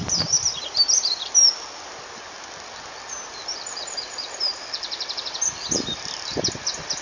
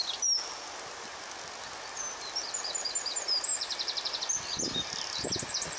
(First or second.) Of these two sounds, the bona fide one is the second